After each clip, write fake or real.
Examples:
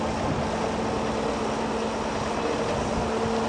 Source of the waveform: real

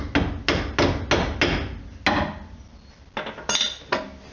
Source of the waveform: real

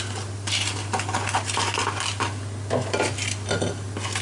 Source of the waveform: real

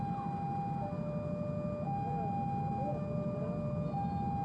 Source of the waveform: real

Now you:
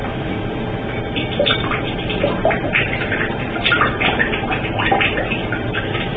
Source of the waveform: real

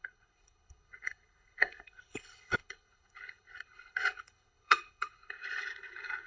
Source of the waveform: fake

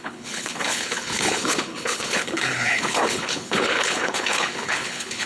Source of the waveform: fake